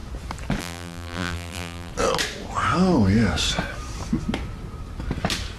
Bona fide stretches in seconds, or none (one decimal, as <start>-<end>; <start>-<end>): 0.0-0.6; 1.9-5.6